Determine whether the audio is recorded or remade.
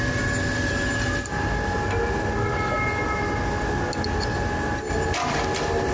recorded